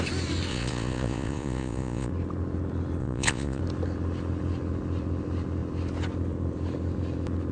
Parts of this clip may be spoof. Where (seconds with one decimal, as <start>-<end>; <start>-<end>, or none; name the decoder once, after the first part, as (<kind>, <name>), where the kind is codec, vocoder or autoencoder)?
0.5-2.1 (vocoder, Vocos); 3.0-3.6